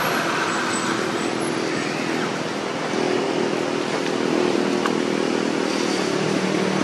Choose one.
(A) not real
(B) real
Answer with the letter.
B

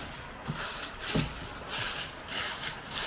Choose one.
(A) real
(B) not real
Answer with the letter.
A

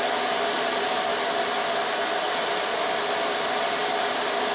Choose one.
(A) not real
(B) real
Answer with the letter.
B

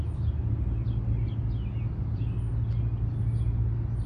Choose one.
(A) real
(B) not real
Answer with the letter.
A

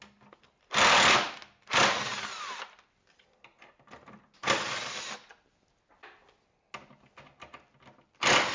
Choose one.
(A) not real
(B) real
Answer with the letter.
B